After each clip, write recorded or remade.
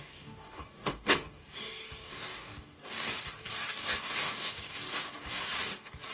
remade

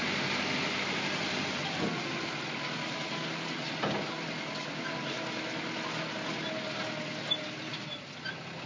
recorded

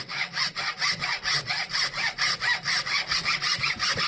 recorded